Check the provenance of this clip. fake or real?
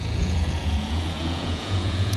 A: fake